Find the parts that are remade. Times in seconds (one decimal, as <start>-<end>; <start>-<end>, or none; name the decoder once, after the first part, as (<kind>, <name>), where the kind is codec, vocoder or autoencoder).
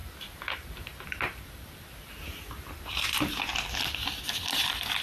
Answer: 0.0-3.5 (vocoder, BigVGAN v2); 4.6-5.0